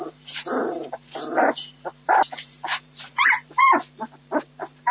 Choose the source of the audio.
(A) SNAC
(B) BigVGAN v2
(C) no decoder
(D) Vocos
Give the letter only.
B